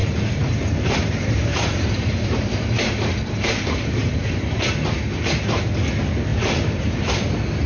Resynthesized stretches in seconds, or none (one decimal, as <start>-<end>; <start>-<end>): 0.0-4.6; 6.3-7.2